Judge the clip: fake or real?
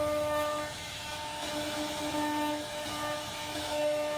fake